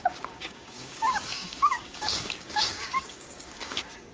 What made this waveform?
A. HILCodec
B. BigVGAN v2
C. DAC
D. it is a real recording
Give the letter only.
C